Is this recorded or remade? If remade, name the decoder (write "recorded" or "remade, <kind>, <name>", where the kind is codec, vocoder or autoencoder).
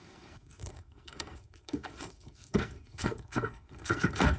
remade, codec, SNAC